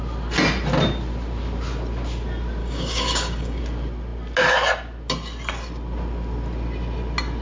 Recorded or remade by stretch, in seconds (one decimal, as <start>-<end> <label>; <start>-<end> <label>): 0.0-2.6 recorded; 2.6-3.6 remade; 3.6-7.4 recorded